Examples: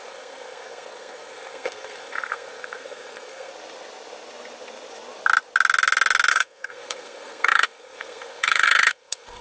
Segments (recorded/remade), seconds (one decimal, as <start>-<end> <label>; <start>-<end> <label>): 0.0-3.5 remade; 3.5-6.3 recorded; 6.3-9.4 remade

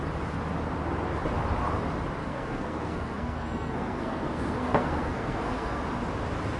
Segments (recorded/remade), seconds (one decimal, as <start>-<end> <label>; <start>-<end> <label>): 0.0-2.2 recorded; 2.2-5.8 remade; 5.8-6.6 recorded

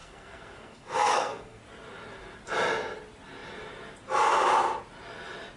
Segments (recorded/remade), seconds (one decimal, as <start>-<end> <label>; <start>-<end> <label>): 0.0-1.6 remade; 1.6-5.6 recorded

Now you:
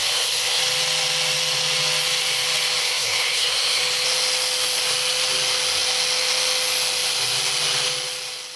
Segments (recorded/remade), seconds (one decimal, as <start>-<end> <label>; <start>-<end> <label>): 0.0-0.6 remade; 0.6-2.8 recorded; 2.8-3.8 remade; 3.8-8.6 recorded

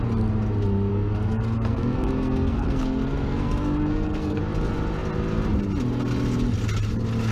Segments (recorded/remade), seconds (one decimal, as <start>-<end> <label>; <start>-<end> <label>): 0.0-0.9 recorded; 0.9-4.4 remade; 4.4-7.3 recorded